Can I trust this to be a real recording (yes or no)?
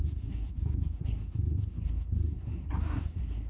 no